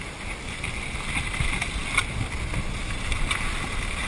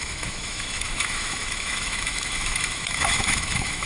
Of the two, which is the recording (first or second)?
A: first